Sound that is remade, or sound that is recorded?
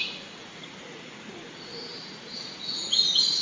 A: remade